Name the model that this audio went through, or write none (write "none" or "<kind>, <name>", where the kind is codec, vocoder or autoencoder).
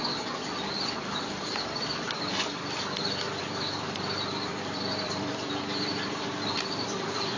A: vocoder, BigVGAN v2